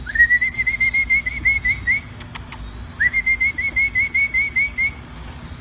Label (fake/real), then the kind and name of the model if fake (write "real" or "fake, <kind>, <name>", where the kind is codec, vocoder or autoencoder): real